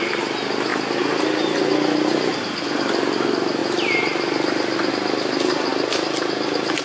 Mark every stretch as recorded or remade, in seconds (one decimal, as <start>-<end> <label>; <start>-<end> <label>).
0.0-6.8 recorded